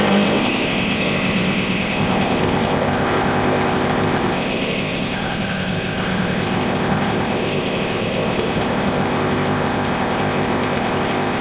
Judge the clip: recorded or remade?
remade